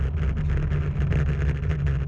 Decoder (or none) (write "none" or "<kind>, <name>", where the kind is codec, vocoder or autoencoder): none